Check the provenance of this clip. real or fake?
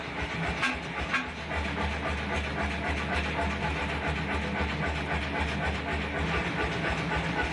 real